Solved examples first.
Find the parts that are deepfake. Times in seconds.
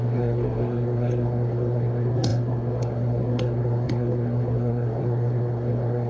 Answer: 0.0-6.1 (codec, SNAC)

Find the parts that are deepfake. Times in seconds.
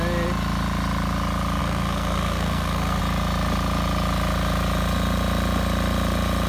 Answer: 1.6-3.0 (codec, SNAC)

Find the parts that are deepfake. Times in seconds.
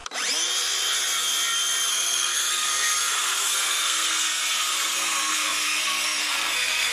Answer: 1.9-6.9 (codec, SNAC)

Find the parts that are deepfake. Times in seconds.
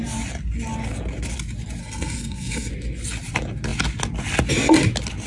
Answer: 1.8-2.7 (codec, SNAC)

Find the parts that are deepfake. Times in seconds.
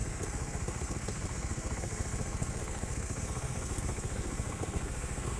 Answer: 0.0-5.4 (codec, SNAC)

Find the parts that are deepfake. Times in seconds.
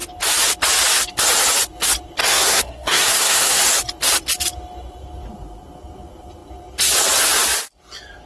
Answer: 2.2-3.6 (codec, SNAC)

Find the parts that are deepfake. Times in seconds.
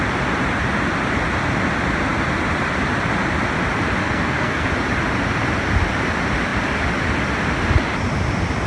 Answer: 4.0-4.7 (codec, SNAC)